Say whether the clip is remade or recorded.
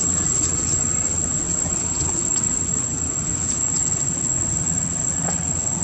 remade